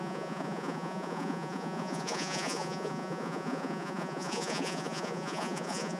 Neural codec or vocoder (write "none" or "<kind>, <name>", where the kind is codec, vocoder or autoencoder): vocoder, Vocos